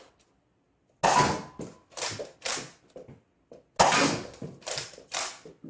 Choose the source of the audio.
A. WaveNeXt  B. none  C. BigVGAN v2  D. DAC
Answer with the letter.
B